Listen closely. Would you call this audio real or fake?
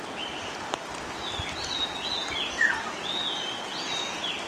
real